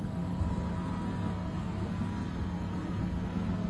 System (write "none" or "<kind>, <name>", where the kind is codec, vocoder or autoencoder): codec, SNAC